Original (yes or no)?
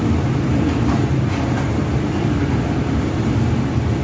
yes